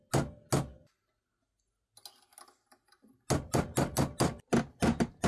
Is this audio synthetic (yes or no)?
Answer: no